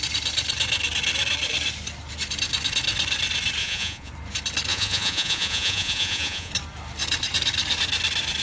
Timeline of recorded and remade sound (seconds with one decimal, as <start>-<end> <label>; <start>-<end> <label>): 0.0-3.6 recorded; 3.6-4.1 remade; 4.1-4.7 recorded; 4.7-6.5 remade; 6.5-8.4 recorded